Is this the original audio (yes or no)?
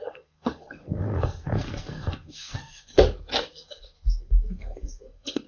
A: no